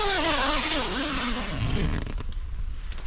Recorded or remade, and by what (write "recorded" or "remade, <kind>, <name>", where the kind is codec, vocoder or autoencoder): recorded